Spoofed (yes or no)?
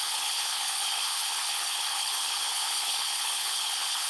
yes